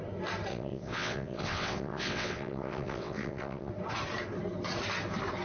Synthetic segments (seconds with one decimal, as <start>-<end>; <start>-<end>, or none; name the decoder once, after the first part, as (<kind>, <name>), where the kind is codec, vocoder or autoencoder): 0.5-3.7 (vocoder, WaveNeXt)